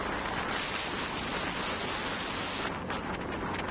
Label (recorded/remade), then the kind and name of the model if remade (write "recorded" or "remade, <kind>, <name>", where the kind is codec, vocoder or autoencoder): recorded